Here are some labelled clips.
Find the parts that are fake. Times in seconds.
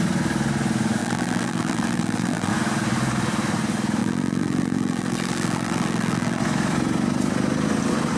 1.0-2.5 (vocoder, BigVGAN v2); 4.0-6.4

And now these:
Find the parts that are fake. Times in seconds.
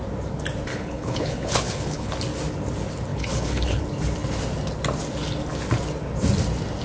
0.7-2.1 (codec, HILCodec); 3.1-3.8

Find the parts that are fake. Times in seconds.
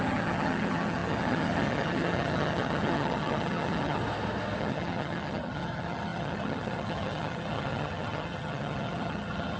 0.0-4.0 (vocoder, HiFi-GAN); 4.6-9.6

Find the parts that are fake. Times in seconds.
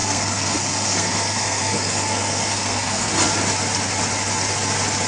0.0-3.1 (codec, SNAC)